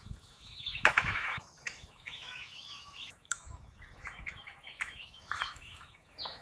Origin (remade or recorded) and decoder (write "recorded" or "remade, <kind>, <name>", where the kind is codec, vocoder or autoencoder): remade, autoencoder, DAC-VAE